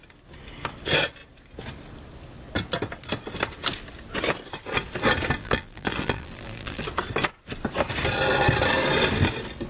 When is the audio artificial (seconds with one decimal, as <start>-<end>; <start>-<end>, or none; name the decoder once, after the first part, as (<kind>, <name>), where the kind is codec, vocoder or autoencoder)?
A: 5.4-6.8 (vocoder, BigVGAN v2)